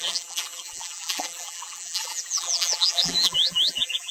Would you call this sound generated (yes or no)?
yes